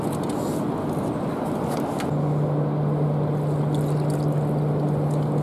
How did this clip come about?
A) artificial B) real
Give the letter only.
B